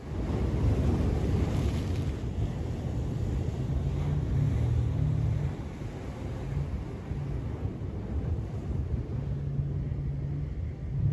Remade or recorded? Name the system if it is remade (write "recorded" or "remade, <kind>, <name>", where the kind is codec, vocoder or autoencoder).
recorded